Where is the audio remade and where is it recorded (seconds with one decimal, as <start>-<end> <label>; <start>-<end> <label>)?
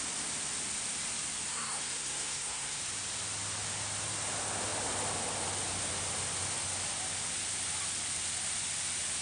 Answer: 0.0-1.5 recorded; 1.5-2.8 remade; 2.8-9.2 recorded